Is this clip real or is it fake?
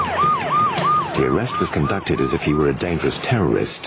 real